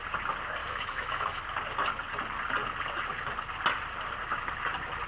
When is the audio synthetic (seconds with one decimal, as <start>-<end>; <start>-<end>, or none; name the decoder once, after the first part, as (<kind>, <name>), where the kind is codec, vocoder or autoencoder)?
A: 0.6-1.4 (autoencoder, DAC-VAE)